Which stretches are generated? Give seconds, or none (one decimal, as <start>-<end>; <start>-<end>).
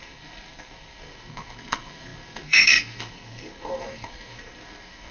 0.0-5.1